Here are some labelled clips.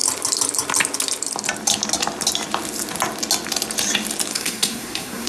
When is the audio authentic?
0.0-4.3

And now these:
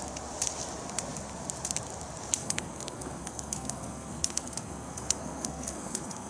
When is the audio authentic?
0.0-2.4

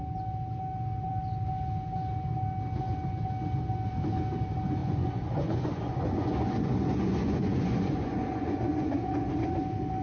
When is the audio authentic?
0.0-4.8; 9.3-10.0

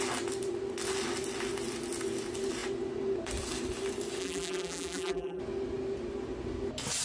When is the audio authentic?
0.0-4.2; 5.4-7.0

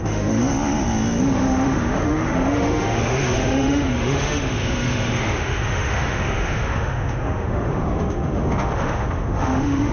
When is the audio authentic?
0.4-1.2

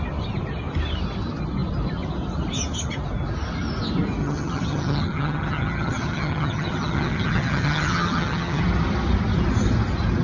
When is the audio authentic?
0.0-4.2; 8.6-10.2

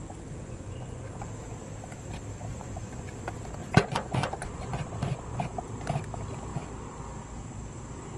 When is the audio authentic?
0.0-0.4; 1.3-2.5; 3.1-3.6; 5.5-8.2

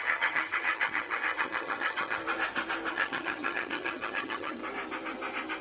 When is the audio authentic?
2.2-2.9; 4.6-5.6